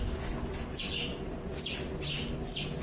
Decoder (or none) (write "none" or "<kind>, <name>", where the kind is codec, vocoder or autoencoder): none